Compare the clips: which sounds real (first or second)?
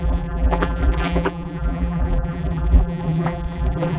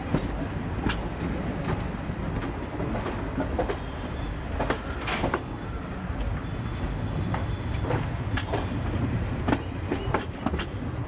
second